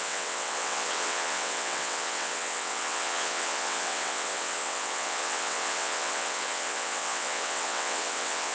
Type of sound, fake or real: fake